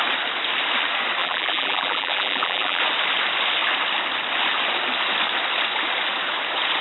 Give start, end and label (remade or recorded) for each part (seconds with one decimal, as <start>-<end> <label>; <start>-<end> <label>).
0.0-1.2 recorded; 1.2-2.8 remade; 2.8-6.8 recorded